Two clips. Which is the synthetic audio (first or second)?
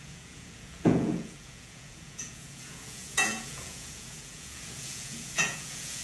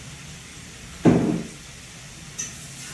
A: first